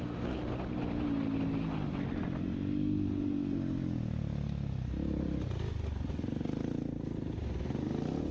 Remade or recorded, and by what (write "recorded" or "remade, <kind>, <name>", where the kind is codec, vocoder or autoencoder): recorded